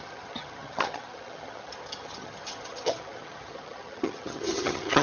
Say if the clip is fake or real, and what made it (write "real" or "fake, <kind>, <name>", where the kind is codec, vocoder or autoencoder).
fake, vocoder, HiFi-GAN